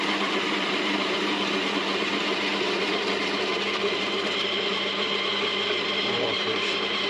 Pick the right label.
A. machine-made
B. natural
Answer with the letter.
A